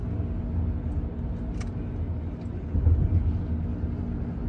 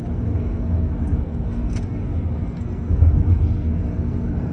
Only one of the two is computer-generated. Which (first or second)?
second